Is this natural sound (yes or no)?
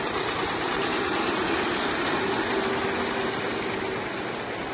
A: yes